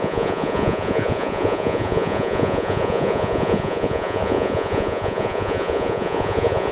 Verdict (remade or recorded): remade